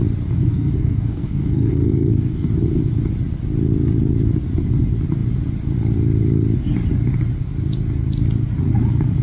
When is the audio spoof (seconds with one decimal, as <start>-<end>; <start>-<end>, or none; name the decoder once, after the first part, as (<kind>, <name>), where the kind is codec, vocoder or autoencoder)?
0.5-2.5 (codec, SNAC)